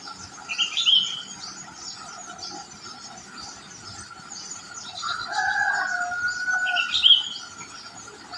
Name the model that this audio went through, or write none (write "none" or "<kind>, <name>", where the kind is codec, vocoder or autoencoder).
none